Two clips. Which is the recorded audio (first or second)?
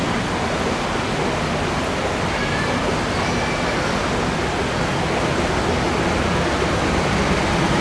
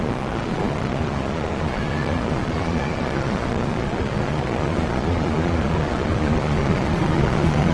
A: first